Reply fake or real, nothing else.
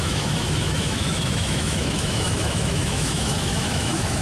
fake